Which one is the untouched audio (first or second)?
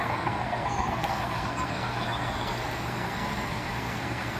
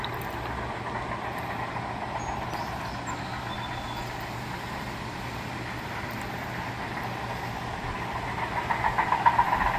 second